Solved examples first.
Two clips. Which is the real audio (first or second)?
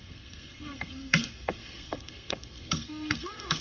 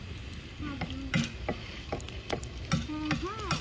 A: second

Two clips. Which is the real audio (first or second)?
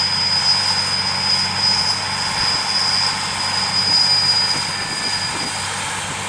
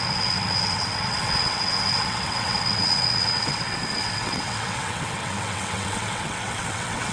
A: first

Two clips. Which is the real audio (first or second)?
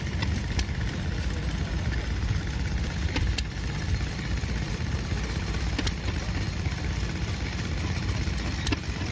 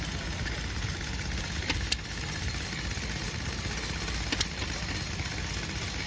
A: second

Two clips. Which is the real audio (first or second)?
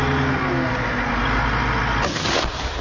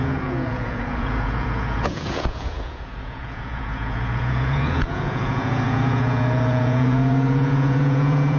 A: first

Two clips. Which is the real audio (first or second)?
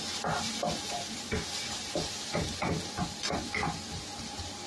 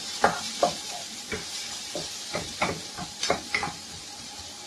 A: first